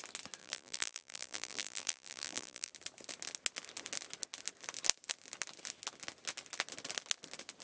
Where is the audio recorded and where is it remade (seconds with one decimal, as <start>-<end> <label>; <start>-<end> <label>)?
0.0-0.4 recorded; 0.4-2.7 remade; 2.7-7.6 recorded

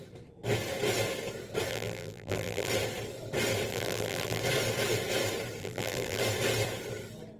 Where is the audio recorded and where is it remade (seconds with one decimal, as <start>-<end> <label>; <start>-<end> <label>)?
0.0-1.7 recorded; 1.7-2.7 remade; 2.7-3.7 recorded; 3.7-4.4 remade; 4.4-5.6 recorded; 5.6-6.2 remade; 6.2-7.4 recorded

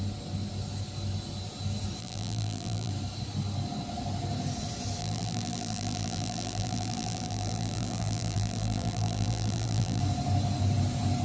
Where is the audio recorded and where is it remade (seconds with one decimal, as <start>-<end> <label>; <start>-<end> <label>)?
0.0-2.0 recorded; 2.0-2.9 remade; 2.9-5.0 recorded; 5.0-10.0 remade; 10.0-11.2 recorded

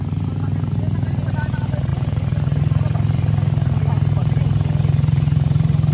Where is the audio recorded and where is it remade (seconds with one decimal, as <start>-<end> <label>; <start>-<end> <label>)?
0.0-1.9 recorded; 1.9-3.8 remade; 3.8-4.2 recorded; 4.2-5.9 remade

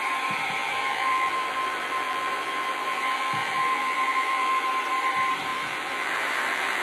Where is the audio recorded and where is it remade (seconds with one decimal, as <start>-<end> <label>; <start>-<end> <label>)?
0.0-0.6 recorded; 0.6-4.7 remade; 4.7-5.5 recorded; 5.5-6.8 remade

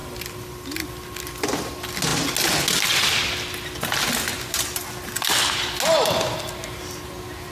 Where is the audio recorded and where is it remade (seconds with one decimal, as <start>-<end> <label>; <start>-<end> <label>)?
0.0-1.3 remade; 1.3-7.5 recorded